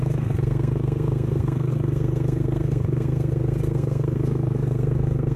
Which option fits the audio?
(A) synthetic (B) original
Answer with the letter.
A